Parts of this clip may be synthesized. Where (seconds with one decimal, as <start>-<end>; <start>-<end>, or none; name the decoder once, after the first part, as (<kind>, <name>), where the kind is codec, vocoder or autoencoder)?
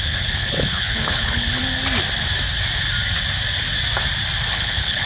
0.0-1.6 (codec, HILCodec); 4.5-5.1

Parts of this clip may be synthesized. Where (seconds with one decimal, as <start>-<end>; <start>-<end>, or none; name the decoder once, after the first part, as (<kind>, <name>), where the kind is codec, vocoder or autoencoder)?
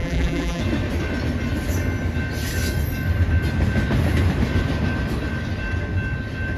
0.0-0.6 (vocoder, BigVGAN v2)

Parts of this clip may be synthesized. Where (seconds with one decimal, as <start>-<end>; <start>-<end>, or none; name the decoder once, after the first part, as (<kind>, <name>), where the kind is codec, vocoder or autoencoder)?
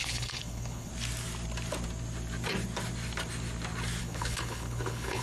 0.0-0.9 (codec, HILCodec); 4.0-5.2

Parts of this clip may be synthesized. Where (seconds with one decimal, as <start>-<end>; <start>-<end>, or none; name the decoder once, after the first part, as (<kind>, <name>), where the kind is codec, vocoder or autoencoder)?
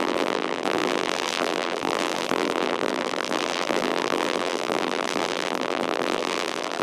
0.0-6.8 (vocoder, BigVGAN v2)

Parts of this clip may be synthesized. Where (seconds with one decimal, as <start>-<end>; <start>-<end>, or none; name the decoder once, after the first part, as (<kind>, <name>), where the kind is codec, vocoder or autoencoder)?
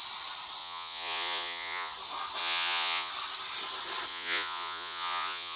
0.6-1.9 (vocoder, Vocos); 2.4-3.1; 4.1-5.6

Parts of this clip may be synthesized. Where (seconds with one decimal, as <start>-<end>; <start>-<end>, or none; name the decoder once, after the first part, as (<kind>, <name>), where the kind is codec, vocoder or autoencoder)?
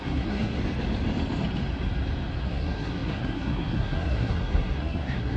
0.0-0.6 (codec, SNAC); 2.4-5.4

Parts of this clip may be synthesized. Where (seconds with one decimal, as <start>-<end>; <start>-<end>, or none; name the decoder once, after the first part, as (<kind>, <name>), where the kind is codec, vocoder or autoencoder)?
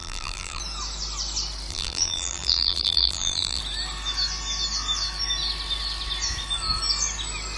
0.0-0.6 (vocoder, BigVGAN v2); 1.7-3.6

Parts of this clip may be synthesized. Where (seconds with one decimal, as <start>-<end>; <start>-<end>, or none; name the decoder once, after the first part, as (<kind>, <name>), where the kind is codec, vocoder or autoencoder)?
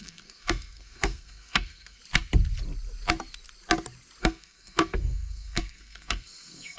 0.0-2.0 (codec, SNAC); 4.2-6.8